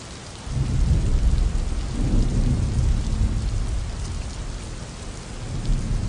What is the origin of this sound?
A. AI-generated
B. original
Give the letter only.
B